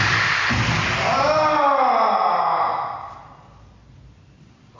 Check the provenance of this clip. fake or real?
real